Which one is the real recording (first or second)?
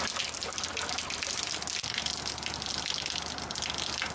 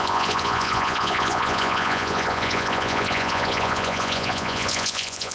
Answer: first